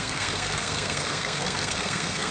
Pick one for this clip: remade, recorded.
remade